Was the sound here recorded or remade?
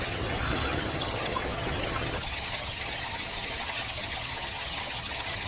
remade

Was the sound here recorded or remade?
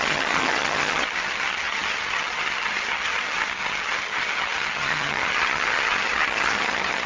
remade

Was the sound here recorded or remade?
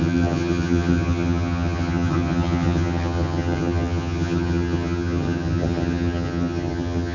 remade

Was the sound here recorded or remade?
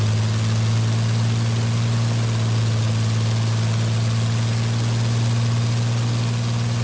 recorded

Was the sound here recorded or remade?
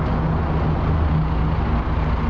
recorded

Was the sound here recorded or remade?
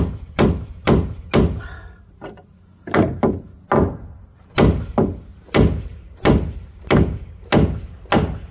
recorded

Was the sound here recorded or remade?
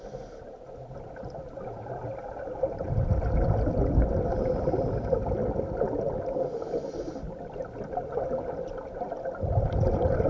recorded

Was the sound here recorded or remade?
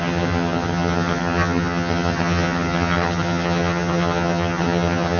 remade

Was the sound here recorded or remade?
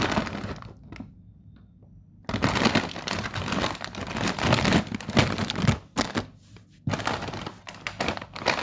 recorded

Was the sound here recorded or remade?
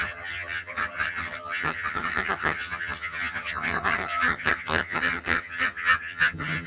remade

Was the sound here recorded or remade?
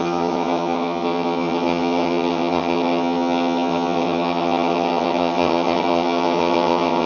remade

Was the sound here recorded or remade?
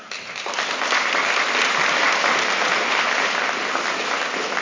recorded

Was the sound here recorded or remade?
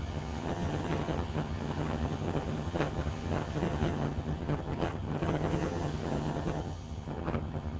remade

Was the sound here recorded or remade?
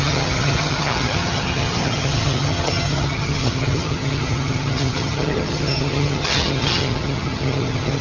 remade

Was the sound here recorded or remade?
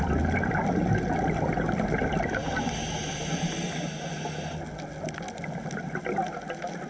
recorded